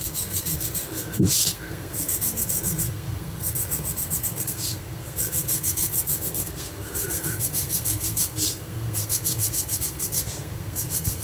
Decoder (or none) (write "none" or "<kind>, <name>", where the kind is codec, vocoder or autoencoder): codec, SNAC